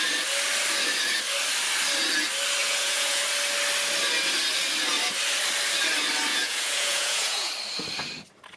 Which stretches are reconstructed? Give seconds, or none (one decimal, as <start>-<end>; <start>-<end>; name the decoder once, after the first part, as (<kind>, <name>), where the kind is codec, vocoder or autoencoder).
2.6-3.2 (vocoder, Vocos); 6.3-7.5